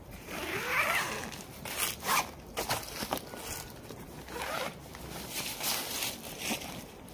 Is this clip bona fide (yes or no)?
yes